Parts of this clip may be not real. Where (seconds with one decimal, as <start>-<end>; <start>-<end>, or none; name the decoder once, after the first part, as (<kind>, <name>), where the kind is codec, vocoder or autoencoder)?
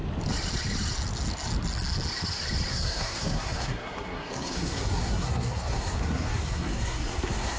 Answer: 2.7-7.6 (codec, SNAC)